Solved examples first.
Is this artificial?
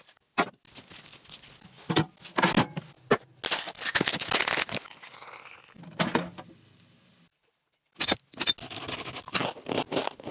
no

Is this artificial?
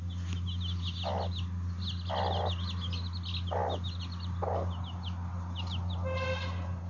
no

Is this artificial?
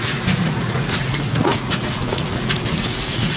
yes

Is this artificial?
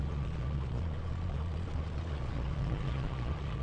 yes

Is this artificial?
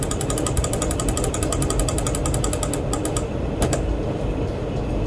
no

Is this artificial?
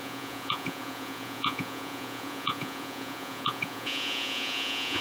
yes